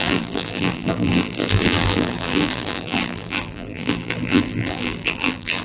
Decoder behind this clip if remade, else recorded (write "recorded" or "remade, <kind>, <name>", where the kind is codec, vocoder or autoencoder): remade, vocoder, BigVGAN v2